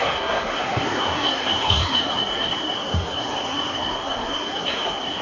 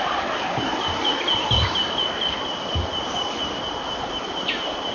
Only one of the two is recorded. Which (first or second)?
second